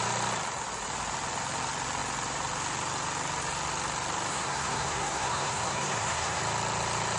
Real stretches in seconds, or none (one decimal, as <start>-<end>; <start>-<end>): 0.0-4.3; 6.4-7.2